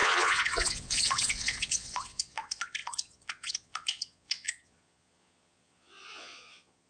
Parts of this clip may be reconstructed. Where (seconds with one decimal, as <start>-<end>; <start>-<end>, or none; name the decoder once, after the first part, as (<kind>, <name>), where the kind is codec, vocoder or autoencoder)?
0.0-6.9 (vocoder, Vocos)